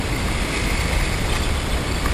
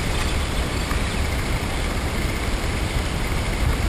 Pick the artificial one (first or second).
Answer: second